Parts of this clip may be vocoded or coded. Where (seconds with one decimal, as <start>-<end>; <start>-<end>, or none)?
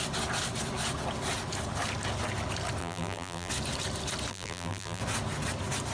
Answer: 2.8-3.5; 4.3-5.0